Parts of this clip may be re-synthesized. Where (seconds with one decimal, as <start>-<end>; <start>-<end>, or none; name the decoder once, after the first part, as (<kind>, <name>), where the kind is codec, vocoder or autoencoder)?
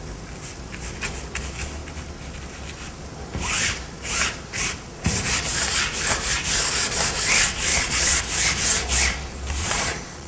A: 7.7-8.2 (vocoder, Vocos); 9.6-10.3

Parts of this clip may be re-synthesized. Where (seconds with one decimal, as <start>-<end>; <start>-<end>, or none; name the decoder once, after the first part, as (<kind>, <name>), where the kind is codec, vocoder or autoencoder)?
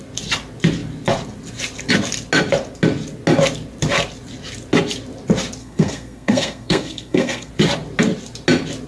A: 5.6-7.5 (codec, SNAC)